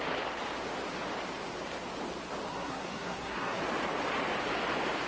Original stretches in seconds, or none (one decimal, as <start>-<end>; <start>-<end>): 0.0-2.5; 3.6-5.1